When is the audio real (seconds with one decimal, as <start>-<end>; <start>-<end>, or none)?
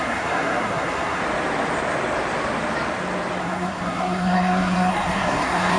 1.2-3.4